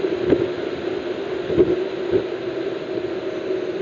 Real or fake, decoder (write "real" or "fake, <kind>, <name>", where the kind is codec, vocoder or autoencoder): real